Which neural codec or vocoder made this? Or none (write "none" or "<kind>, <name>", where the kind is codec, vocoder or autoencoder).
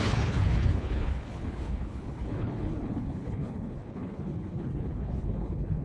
codec, HILCodec